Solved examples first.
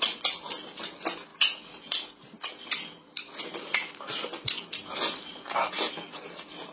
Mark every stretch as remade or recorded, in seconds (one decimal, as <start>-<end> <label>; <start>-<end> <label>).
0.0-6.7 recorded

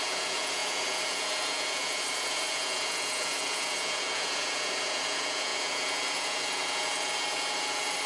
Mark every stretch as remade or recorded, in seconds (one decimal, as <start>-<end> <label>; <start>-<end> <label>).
0.0-8.1 remade

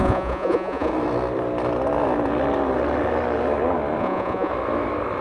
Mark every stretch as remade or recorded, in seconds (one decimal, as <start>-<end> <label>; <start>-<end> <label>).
0.0-0.9 remade; 0.9-4.0 recorded; 4.0-4.5 remade; 4.5-5.2 recorded